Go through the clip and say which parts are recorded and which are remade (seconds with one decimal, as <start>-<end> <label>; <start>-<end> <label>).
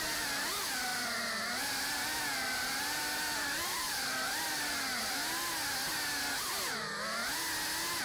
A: 0.0-5.2 remade; 5.2-6.7 recorded; 6.7-7.2 remade; 7.2-8.0 recorded